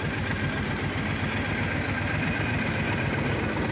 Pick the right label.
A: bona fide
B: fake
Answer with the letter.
A